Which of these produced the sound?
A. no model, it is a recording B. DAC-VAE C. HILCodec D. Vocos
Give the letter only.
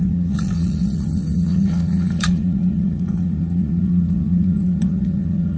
D